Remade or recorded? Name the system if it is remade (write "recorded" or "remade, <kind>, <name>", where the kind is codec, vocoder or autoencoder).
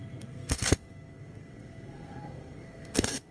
remade, codec, SNAC